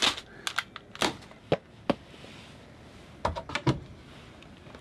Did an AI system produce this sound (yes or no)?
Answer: no